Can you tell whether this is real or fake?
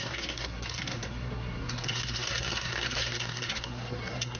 fake